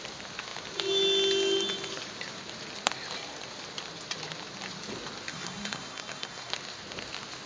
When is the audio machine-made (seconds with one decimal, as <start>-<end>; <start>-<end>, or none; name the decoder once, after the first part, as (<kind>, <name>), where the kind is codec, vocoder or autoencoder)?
5.3-6.5 (codec, SNAC)